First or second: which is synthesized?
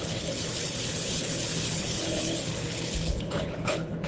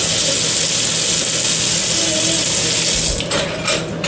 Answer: first